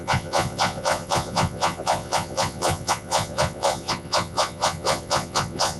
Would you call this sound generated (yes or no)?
yes